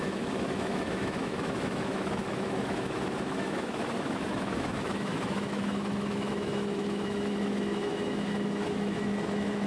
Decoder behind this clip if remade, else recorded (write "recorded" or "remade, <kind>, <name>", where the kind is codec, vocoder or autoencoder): remade, autoencoder, DAC-VAE